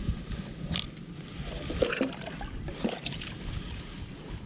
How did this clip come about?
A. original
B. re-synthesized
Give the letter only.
A